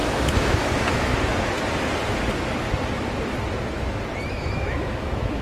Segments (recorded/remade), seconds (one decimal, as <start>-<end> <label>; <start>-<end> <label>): 0.0-1.1 remade; 1.1-4.3 recorded; 4.3-5.4 remade